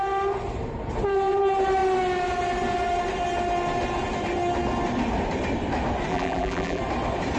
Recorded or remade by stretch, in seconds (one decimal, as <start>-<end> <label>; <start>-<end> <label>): 0.0-6.1 recorded; 6.1-6.8 remade; 6.8-7.4 recorded